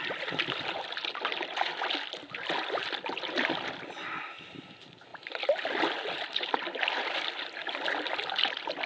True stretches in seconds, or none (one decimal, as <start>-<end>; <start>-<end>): 0.0-8.9